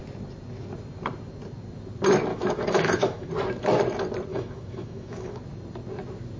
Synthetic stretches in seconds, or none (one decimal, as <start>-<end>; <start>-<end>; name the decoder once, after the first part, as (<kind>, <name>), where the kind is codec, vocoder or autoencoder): 2.3-3.3 (autoencoder, DAC-VAE); 4.3-5.4